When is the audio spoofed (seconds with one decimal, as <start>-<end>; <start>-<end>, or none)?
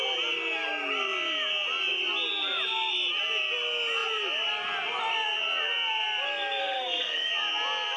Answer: 6.6-7.3